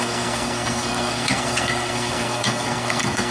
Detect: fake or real fake